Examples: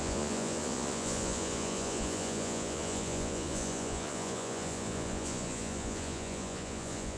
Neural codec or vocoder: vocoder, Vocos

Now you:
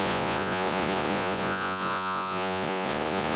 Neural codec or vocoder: vocoder, Vocos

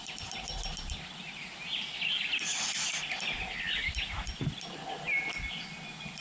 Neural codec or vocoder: none